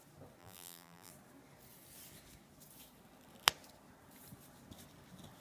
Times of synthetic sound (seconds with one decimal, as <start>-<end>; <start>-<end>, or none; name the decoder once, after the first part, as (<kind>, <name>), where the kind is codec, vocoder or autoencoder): 0.4-1.1 (vocoder, BigVGAN v2)